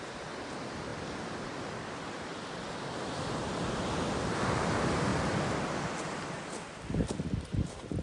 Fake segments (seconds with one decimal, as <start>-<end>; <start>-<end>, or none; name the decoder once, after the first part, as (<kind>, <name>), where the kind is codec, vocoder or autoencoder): none